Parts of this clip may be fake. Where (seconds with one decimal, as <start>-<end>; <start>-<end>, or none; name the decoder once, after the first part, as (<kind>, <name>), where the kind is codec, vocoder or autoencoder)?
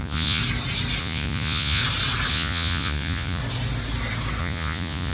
0.0-0.4 (vocoder, Vocos); 1.0-1.8; 2.3-3.4; 4.4-5.1